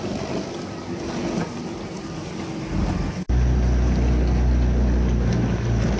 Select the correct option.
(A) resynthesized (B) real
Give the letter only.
B